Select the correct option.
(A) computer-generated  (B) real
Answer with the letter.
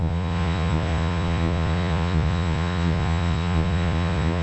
A